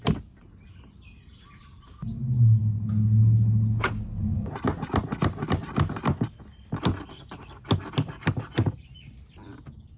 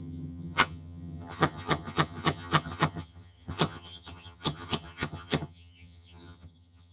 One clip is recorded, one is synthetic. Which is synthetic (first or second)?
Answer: second